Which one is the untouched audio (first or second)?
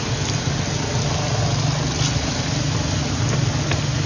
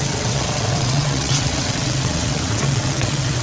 first